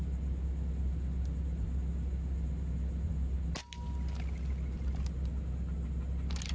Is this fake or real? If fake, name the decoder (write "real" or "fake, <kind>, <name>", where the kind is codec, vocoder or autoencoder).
real